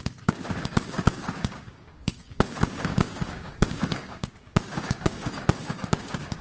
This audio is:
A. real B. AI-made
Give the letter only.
B